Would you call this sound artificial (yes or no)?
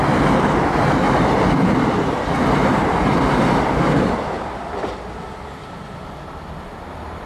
no